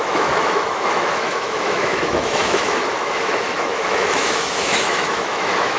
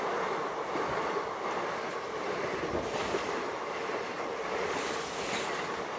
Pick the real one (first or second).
second